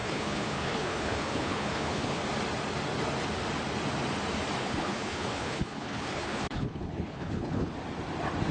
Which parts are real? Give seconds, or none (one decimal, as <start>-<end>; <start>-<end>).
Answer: 2.2-4.6; 7.7-8.5